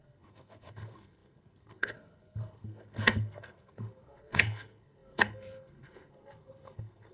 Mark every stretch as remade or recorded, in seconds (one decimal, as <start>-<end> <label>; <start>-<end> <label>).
0.0-7.1 remade